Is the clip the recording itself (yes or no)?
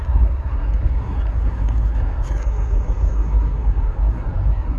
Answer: no